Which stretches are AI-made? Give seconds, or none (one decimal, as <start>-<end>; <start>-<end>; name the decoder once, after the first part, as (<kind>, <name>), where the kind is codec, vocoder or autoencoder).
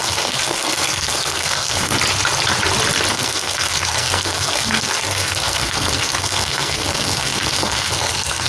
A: 0.0-1.9 (codec, SNAC); 3.1-8.5